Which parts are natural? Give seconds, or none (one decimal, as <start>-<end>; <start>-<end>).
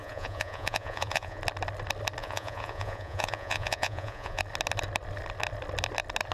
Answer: 1.4-2.2; 4.4-6.3